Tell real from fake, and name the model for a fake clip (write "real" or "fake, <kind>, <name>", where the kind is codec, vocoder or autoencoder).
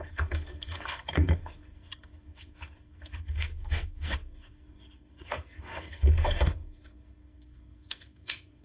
fake, codec, SNAC